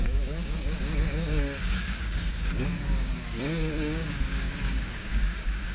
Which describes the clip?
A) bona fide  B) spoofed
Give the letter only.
B